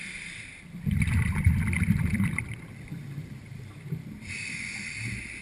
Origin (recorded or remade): recorded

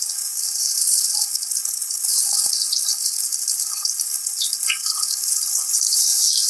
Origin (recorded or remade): remade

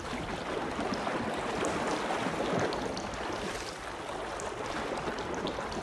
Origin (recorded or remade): recorded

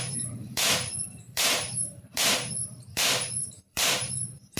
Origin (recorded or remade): remade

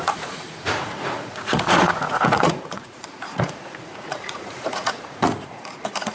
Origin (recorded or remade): remade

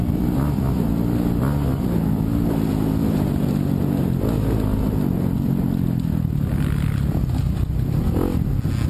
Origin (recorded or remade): recorded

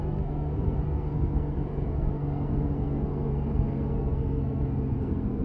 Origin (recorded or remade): remade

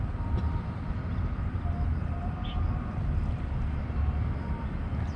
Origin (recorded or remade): recorded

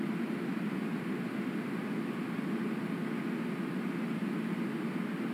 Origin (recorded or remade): recorded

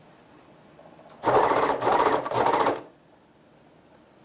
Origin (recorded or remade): remade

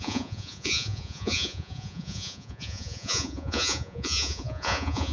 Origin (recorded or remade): remade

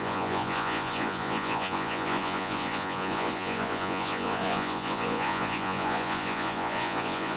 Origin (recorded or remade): remade